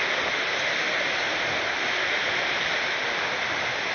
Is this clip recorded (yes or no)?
yes